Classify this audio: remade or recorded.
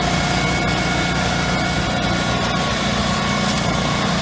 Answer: recorded